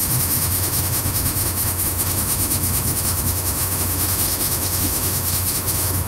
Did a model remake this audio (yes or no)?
yes